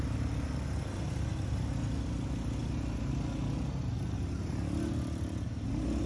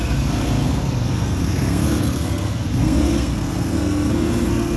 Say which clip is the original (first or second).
first